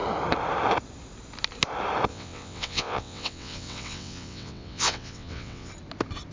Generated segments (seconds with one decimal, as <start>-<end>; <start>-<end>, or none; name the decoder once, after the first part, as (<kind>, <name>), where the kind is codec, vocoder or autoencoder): 2.1-5.7 (vocoder, WaveNeXt)

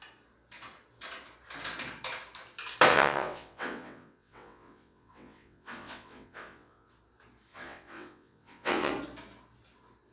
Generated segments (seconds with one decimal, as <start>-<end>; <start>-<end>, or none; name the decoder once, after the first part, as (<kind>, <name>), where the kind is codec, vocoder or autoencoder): 2.9-6.9 (vocoder, WaveNeXt); 7.5-8.9